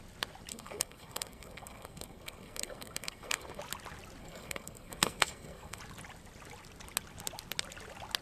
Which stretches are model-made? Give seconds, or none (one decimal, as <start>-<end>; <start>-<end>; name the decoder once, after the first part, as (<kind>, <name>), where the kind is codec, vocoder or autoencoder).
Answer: 0.5-3.6 (codec, SNAC); 4.2-5.8